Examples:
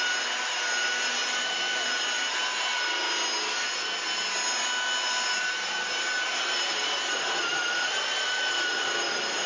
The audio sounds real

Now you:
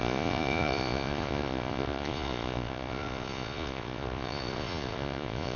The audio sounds fake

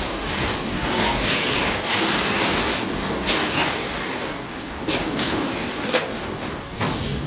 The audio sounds fake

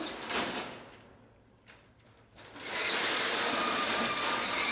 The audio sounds real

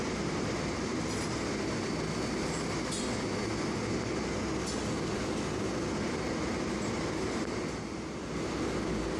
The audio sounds real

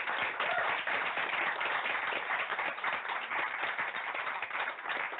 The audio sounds fake